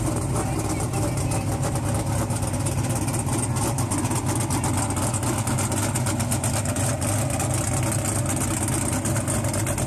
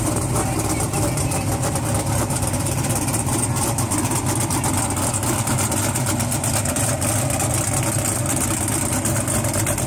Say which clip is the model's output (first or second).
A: second